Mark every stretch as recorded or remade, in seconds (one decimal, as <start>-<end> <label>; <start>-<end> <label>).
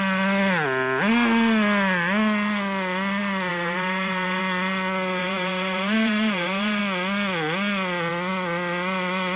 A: 0.0-3.5 recorded; 3.5-4.4 remade; 4.4-5.2 recorded; 5.2-6.8 remade; 6.8-9.4 recorded